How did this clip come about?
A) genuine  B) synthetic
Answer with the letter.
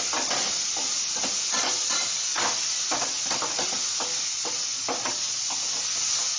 A